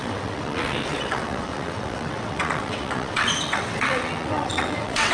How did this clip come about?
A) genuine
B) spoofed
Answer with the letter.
B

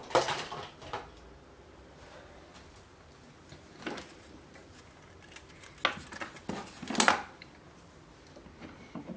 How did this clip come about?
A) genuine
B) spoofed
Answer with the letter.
A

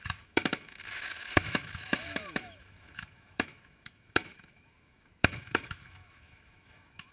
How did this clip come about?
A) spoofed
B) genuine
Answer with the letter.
A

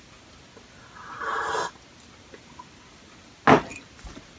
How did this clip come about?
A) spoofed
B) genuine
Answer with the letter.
B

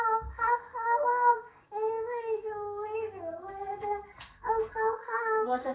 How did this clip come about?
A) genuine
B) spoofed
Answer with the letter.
B